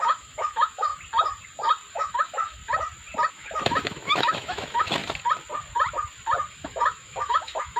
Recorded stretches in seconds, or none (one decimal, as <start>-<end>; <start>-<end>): 0.9-1.9; 2.6-3.3; 5.0-6.5